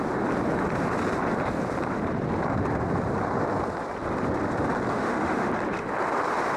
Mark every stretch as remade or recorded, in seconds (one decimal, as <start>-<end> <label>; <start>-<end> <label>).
0.0-4.9 recorded; 4.9-5.5 remade; 5.5-6.6 recorded